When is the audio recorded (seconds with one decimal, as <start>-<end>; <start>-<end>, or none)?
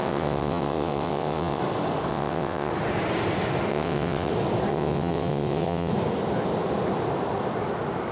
1.6-2.1; 2.7-3.7; 4.3-4.7; 5.9-8.1